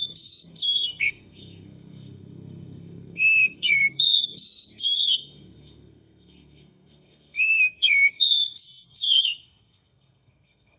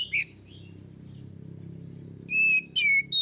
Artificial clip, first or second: first